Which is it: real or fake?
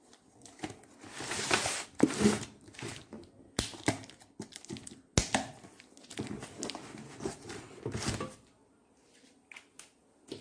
real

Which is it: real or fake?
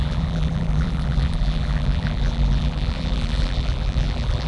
fake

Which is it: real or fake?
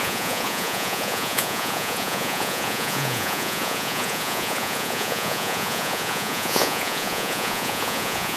fake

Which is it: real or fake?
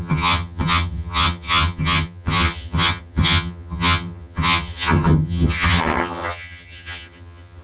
fake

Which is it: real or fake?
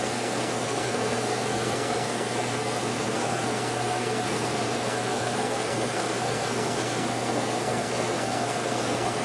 fake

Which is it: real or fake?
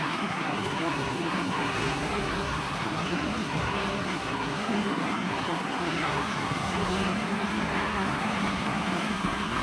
fake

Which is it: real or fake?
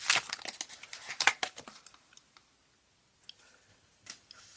real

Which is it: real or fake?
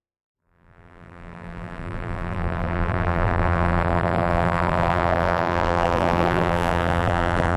fake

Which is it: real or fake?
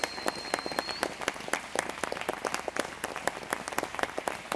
real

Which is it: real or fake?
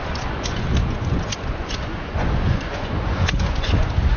fake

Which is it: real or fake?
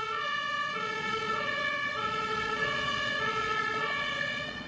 fake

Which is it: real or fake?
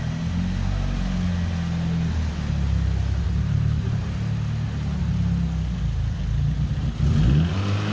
real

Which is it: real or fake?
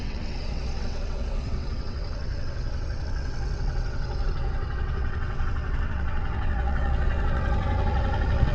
fake